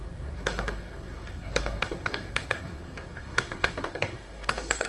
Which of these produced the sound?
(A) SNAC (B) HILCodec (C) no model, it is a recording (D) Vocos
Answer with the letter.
A